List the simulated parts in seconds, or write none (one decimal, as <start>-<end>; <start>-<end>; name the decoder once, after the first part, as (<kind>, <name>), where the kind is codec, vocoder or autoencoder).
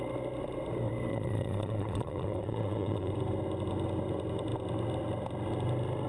1.1-3.1 (vocoder, Vocos)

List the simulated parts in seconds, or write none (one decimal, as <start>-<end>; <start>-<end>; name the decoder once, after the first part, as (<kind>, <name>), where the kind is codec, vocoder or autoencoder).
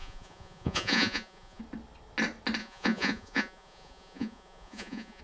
0.0-1.6 (vocoder, Vocos); 2.6-5.2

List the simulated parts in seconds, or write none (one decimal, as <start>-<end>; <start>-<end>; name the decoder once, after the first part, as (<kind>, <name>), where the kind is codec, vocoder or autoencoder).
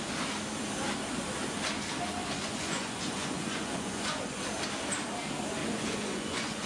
2.2-4.4 (vocoder, Vocos); 5.6-6.7